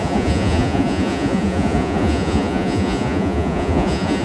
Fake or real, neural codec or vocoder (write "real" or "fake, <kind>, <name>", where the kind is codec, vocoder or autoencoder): fake, vocoder, Vocos